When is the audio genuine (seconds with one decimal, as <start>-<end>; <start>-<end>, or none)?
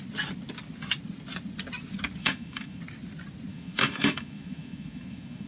0.0-2.2; 2.8-3.5